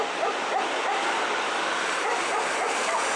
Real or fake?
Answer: real